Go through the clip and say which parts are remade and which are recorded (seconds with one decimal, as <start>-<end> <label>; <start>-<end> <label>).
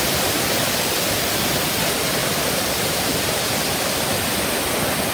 0.0-2.2 recorded; 2.2-3.4 remade; 3.4-5.1 recorded